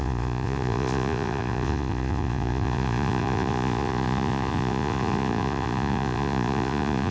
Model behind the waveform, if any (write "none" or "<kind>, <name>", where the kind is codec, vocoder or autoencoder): vocoder, Vocos